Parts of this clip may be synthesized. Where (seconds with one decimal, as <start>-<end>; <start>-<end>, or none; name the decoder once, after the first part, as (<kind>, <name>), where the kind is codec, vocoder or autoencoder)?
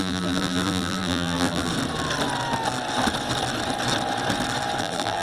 0.0-1.7 (vocoder, BigVGAN v2); 4.8-5.2